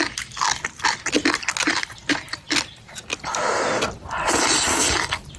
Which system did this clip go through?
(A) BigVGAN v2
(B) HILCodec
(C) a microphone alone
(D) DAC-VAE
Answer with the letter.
C